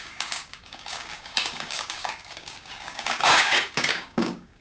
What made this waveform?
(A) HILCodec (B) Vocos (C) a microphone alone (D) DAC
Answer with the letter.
D